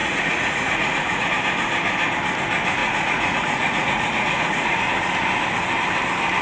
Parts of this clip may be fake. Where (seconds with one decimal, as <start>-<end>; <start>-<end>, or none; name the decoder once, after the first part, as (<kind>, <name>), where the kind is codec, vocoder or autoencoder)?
0.0-1.3 (vocoder, Vocos); 2.8-4.8